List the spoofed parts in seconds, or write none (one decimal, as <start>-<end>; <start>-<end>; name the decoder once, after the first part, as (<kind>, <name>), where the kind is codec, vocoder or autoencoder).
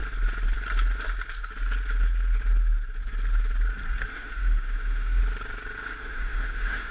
4.1-5.2 (autoencoder, DAC-VAE); 6.0-6.9